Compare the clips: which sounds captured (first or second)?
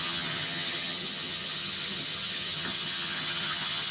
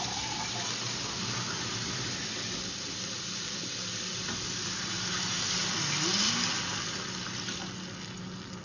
second